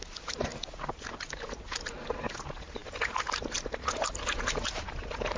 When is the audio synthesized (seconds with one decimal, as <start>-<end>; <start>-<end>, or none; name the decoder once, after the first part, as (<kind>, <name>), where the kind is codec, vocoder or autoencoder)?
none